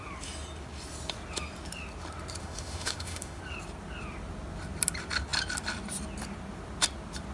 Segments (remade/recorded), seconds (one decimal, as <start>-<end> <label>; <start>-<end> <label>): 0.0-2.4 recorded; 2.4-3.4 remade; 3.4-7.3 recorded